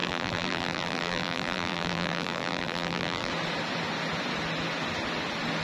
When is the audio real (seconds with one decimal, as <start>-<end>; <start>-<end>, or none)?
3.3-5.6